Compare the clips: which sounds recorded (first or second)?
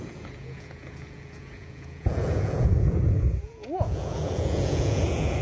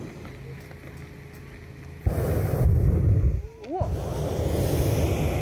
second